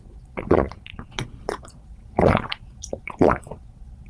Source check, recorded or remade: remade